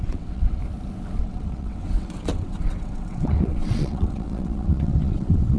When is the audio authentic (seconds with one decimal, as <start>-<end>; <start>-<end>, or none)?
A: 0.6-1.2